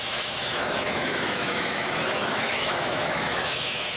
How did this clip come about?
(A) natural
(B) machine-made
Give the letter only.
B